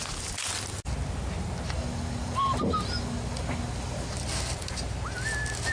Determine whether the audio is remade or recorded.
recorded